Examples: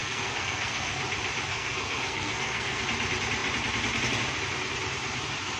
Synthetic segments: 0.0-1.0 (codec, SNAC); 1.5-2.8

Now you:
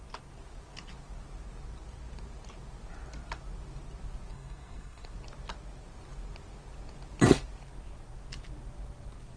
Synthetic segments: 4.3-5.1 (codec, SNAC)

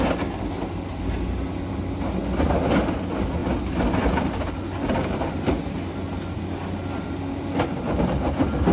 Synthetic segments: none

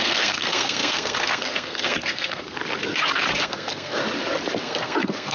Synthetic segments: 0.0-2.6 (codec, SNAC); 3.4-4.0; 4.6-5.3